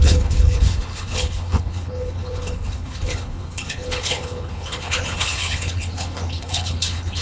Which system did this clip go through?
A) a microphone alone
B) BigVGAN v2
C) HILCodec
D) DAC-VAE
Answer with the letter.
C